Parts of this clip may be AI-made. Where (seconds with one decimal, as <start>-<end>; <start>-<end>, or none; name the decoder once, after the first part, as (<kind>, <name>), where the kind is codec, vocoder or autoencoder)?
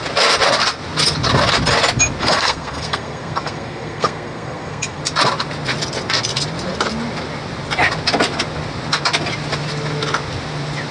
2.2-5.0 (codec, SNAC)